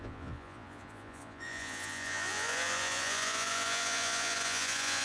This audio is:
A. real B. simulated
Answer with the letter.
B